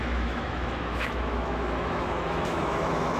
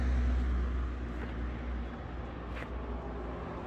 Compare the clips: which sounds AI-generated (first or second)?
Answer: first